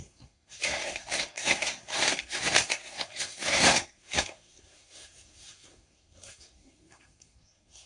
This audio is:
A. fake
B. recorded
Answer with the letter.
A